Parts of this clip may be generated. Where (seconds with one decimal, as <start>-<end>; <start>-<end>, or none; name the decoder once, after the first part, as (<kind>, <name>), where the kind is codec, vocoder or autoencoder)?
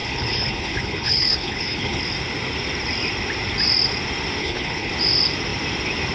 0.0-2.0 (codec, HILCodec); 4.4-4.9